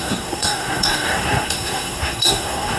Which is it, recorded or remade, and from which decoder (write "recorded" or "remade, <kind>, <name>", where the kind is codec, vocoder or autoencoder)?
remade, codec, SNAC